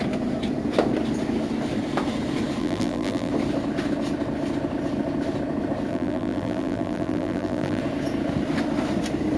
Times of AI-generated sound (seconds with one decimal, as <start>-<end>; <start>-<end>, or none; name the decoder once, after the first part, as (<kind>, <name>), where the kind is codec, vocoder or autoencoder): 2.6-3.3 (vocoder, BigVGAN v2); 5.9-7.8